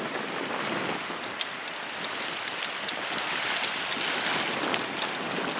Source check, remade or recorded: recorded